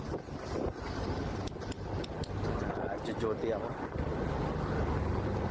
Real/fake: real